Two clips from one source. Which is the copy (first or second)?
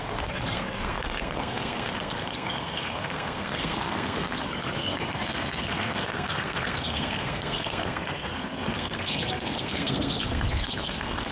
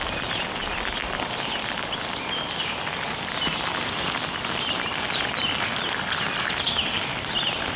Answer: first